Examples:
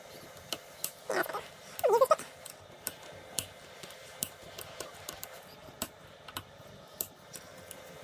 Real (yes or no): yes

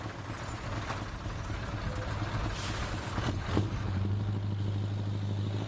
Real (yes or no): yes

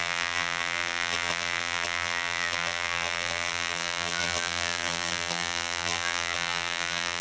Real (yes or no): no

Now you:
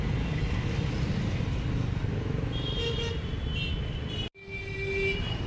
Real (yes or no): yes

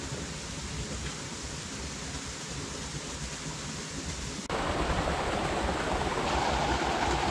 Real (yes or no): yes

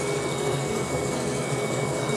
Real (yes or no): no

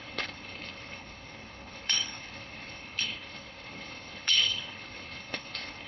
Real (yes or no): no